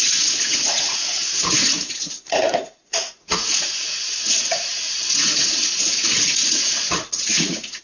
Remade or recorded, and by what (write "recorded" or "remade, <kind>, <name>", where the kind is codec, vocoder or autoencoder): remade, vocoder, Vocos